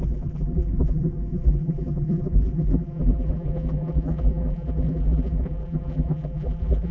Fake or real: fake